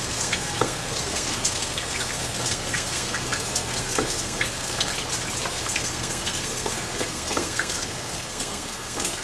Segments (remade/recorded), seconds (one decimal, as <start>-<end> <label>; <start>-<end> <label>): 0.0-4.9 remade; 4.9-5.5 recorded; 5.5-9.2 remade